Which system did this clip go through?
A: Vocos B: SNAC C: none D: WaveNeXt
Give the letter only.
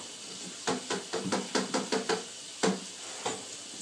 C